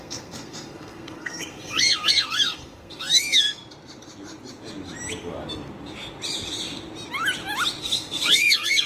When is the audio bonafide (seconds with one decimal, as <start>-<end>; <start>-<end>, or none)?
3.6-7.8